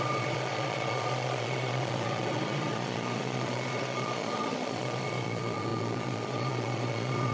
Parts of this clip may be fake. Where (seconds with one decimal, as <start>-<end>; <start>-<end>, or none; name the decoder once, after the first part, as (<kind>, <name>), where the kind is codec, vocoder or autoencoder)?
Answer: 0.0-7.3 (vocoder, Vocos)